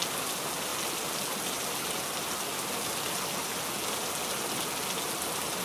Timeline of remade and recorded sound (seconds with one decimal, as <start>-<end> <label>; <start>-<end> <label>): 0.0-5.6 recorded